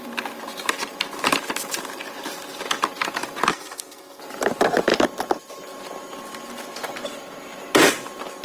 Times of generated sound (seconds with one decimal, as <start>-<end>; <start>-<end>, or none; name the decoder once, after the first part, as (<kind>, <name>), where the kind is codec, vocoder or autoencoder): 3.5-4.2 (codec, SNAC)